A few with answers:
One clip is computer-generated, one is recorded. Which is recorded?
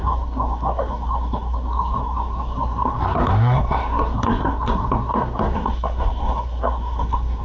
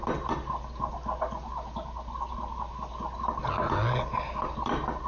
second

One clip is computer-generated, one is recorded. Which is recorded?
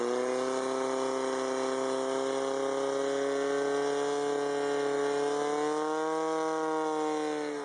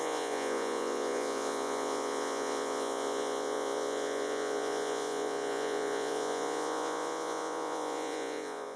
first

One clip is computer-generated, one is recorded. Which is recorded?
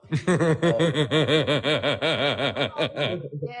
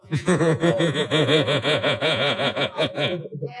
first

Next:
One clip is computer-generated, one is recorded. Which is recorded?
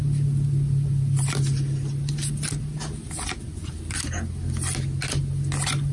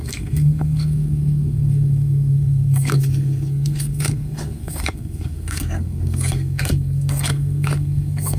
first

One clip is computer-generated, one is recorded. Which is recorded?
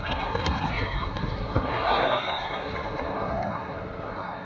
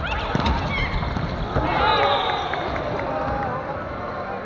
second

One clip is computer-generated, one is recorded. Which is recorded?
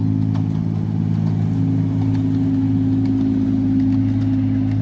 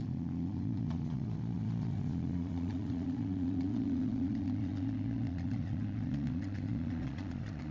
first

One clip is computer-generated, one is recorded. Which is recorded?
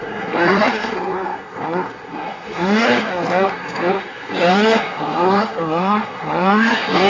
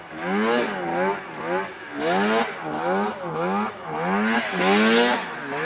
second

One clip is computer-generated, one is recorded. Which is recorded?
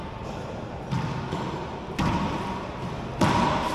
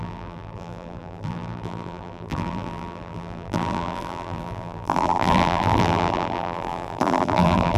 first